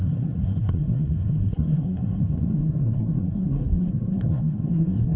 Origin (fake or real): fake